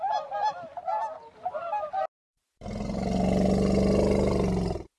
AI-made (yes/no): no